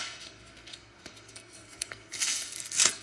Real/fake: fake